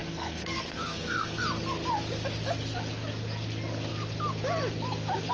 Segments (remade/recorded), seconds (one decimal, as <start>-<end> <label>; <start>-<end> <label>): 0.0-1.4 remade; 1.4-5.3 recorded